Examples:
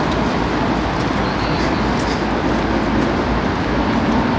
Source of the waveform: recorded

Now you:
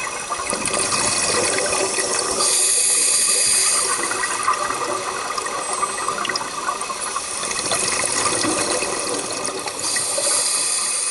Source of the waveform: recorded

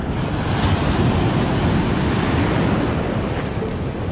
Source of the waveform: recorded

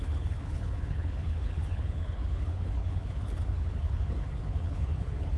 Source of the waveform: remade